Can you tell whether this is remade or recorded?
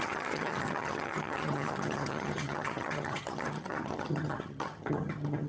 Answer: remade